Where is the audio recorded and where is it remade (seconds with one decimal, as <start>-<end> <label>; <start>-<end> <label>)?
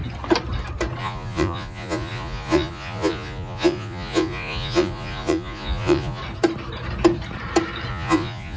0.0-1.0 recorded; 1.0-6.2 remade; 6.2-7.9 recorded; 7.9-8.6 remade